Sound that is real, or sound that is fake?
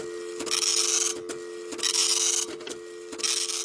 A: real